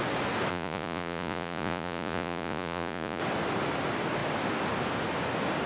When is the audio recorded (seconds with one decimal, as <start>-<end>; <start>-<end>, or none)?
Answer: 0.0-0.5; 3.2-5.7